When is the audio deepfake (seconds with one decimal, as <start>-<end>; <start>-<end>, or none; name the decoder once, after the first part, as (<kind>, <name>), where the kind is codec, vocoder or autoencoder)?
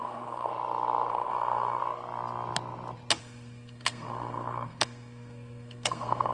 0.0-0.5 (codec, SNAC); 1.1-1.8; 3.2-6.3